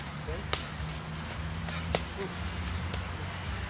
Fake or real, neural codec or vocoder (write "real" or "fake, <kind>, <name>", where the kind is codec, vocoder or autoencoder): real